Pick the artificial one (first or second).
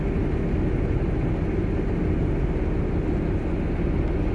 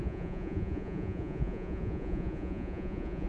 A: second